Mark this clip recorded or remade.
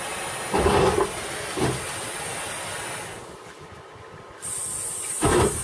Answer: recorded